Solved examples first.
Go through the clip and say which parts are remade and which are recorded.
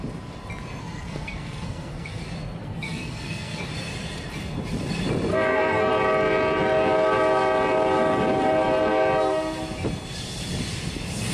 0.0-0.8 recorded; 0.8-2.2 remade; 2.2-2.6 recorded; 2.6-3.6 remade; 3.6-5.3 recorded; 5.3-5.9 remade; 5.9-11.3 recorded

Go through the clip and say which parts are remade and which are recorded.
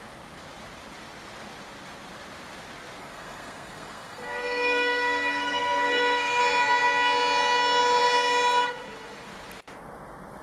0.0-3.0 recorded; 3.0-6.4 remade; 6.4-10.4 recorded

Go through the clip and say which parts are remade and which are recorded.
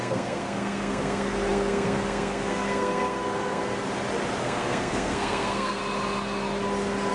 0.0-3.6 remade; 3.6-4.4 recorded; 4.4-5.8 remade; 5.8-7.1 recorded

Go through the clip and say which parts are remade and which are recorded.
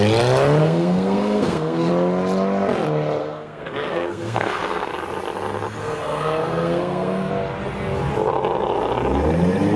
0.0-0.6 recorded; 0.6-1.9 remade; 1.9-3.2 recorded; 3.2-4.9 remade; 4.9-5.8 recorded; 5.8-7.3 remade; 7.3-9.8 recorded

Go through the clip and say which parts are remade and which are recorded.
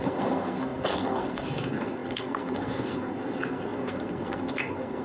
0.0-5.0 remade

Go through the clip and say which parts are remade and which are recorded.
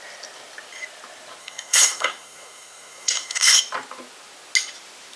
0.0-1.4 recorded; 1.4-3.6 remade; 3.6-5.2 recorded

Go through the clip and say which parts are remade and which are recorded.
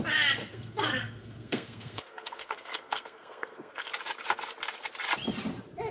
0.0-0.4 recorded; 0.4-3.9 remade; 3.9-5.9 recorded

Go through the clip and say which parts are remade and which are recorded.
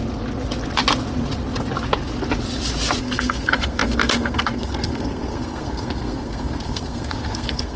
0.0-3.0 recorded; 3.0-7.8 remade